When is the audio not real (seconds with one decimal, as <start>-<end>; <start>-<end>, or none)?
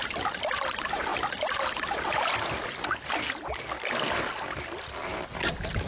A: none